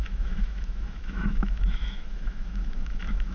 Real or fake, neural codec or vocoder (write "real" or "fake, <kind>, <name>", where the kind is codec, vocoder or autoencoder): fake, autoencoder, DAC-VAE